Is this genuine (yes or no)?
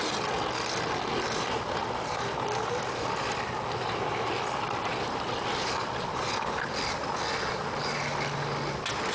yes